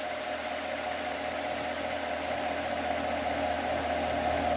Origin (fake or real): real